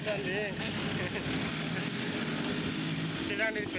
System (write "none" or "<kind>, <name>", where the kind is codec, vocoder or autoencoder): none